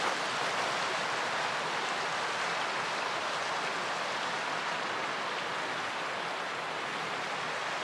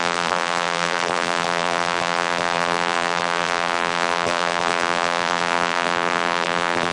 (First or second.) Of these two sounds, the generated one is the second